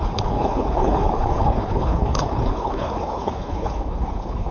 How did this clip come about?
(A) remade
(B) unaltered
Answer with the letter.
A